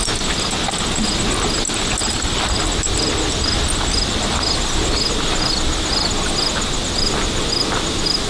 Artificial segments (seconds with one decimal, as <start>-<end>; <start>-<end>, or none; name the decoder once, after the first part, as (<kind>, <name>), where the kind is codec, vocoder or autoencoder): 2.0-2.6 (vocoder, BigVGAN v2)